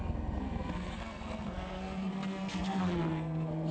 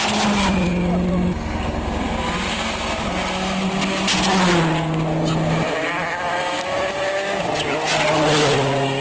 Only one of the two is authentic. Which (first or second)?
second